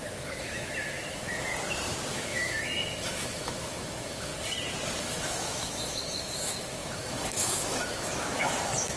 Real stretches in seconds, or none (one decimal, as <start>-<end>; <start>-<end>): 1.5-2.1; 4.3-5.0